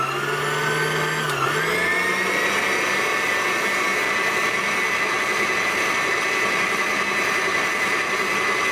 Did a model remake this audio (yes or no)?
no